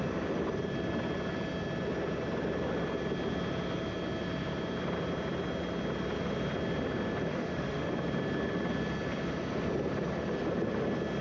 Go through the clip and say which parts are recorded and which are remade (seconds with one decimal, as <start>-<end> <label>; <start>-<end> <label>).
0.0-7.3 recorded; 7.3-7.9 remade; 7.9-11.2 recorded